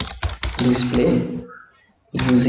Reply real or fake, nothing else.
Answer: real